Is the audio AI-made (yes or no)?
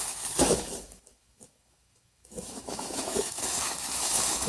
yes